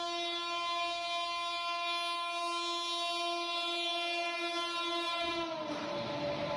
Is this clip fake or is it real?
real